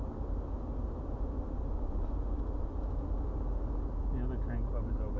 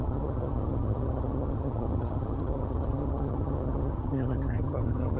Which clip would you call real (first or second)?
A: first